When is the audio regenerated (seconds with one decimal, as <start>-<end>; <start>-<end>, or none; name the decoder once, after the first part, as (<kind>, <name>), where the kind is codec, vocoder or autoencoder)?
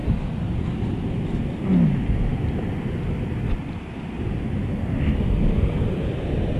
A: none